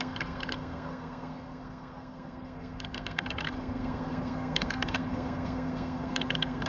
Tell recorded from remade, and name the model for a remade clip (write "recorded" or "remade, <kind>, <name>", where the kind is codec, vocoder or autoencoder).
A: remade, codec, SNAC